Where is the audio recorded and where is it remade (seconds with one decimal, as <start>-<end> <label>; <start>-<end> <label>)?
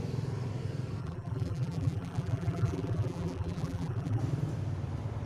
0.0-1.0 recorded; 1.0-4.2 remade; 4.2-5.3 recorded